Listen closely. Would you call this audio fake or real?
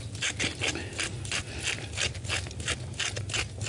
real